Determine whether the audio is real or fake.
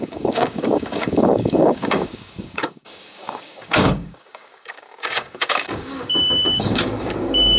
fake